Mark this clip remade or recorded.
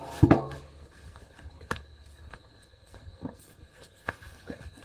remade